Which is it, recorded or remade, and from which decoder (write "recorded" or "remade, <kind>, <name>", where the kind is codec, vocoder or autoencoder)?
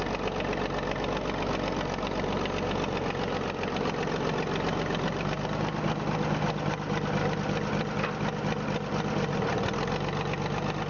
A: recorded